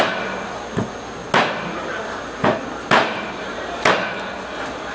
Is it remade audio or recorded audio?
recorded